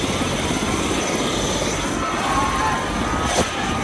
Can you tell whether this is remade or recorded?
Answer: recorded